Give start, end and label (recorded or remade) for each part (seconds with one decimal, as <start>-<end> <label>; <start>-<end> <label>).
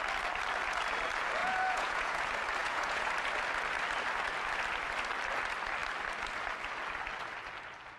0.0-1.4 recorded; 1.4-2.2 remade; 2.2-2.6 recorded; 2.6-3.1 remade; 3.1-8.0 recorded